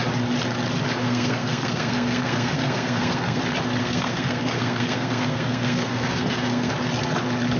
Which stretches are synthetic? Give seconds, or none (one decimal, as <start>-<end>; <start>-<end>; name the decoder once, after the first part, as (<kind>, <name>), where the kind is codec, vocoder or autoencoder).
1.0-3.4 (codec, SNAC); 3.8-6.7